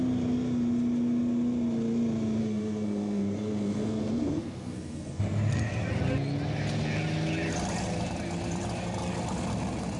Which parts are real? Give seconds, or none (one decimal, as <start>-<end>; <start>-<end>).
0.0-2.4; 5.2-10.0